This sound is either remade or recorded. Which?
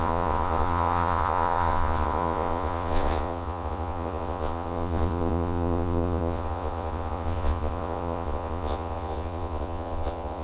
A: remade